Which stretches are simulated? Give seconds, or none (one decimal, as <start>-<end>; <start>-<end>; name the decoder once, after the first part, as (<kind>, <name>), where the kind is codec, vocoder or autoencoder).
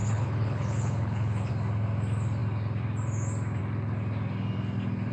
0.0-1.5 (codec, HILCodec)